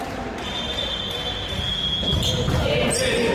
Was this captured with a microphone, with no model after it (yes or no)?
yes